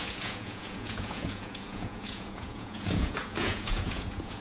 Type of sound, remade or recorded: remade